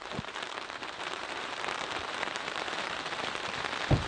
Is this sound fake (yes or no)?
yes